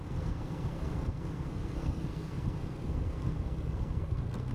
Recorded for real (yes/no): no